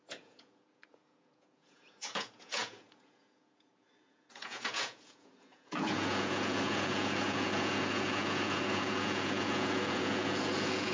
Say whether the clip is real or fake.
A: fake